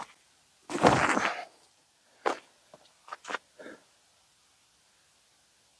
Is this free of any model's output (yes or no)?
yes